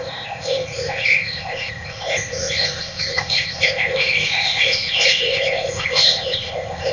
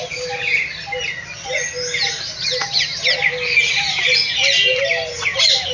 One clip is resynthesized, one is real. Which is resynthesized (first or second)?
first